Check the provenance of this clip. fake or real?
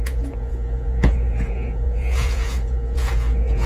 fake